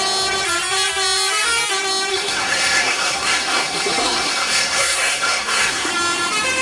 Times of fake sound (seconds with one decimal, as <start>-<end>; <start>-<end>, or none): 2.1-5.9